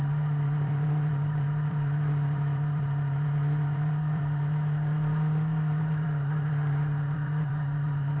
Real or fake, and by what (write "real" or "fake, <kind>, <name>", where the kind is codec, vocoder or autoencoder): fake, vocoder, BigVGAN v2